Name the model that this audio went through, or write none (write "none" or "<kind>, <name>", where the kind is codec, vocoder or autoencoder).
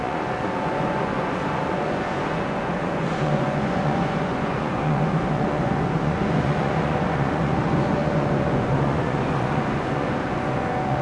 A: vocoder, Vocos